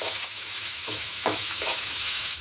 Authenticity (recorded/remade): remade